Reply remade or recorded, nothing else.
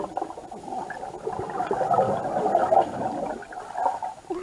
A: recorded